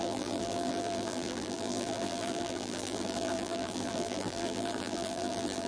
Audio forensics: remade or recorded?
remade